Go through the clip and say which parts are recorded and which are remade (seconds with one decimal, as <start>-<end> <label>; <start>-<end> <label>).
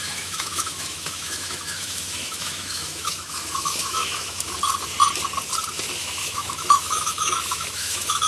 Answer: 0.0-4.5 remade; 4.5-6.0 recorded; 6.0-8.3 remade